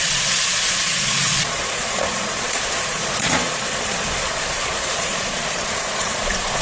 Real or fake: fake